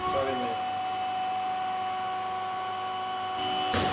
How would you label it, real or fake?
real